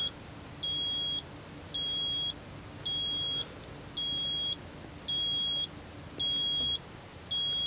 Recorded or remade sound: recorded